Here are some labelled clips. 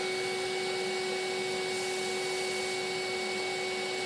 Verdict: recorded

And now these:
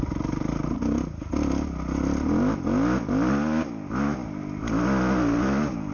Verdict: recorded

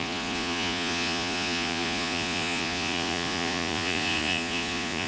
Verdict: remade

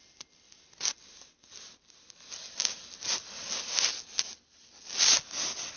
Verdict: recorded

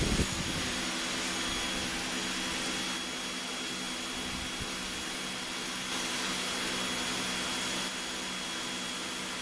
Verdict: recorded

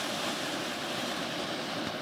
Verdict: recorded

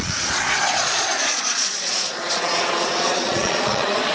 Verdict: remade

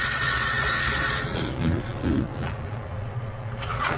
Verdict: remade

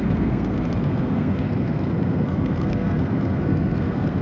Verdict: remade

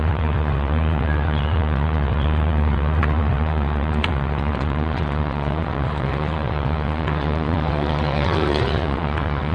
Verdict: remade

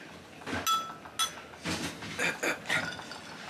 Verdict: recorded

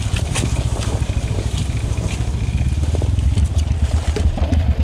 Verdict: recorded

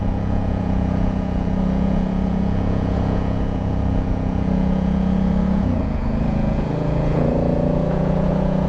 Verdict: remade